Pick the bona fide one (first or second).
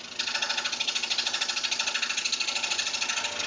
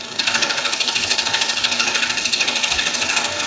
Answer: first